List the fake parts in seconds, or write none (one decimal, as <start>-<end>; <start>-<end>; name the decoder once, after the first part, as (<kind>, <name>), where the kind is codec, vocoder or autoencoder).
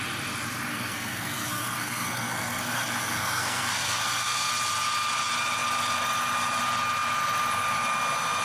0.7-4.5 (codec, SNAC)